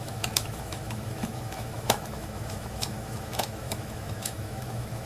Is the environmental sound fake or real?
fake